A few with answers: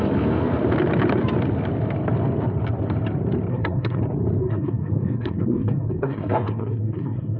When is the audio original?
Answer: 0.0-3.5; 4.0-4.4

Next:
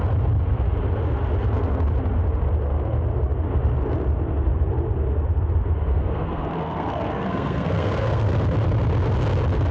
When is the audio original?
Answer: 0.0-5.9; 8.4-9.7

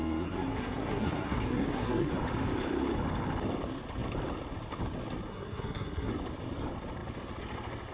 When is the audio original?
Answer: 2.1-5.3; 6.1-7.9

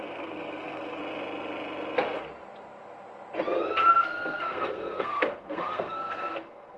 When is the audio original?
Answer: 1.0-3.9